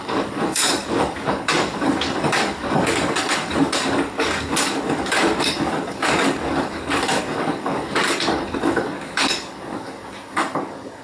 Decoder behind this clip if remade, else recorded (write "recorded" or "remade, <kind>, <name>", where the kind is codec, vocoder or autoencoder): remade, codec, DAC